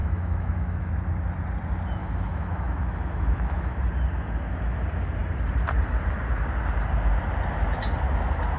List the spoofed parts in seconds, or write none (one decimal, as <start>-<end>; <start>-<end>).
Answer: 0.0-0.9; 2.0-3.8

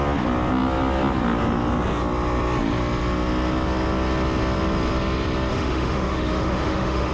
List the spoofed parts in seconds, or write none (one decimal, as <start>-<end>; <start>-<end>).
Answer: 5.5-7.1

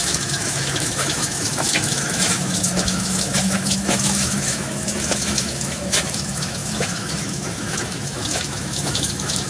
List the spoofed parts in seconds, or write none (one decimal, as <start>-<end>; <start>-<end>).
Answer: 0.0-9.5